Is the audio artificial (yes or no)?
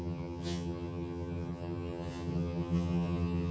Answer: yes